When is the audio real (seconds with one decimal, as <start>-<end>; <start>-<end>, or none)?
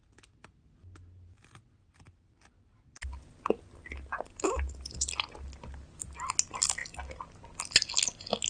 0.0-8.5